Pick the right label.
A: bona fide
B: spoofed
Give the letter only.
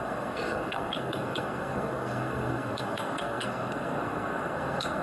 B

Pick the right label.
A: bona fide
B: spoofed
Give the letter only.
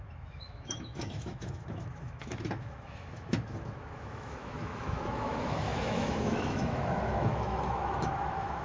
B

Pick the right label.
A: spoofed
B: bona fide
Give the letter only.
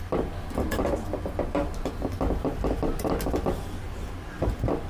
B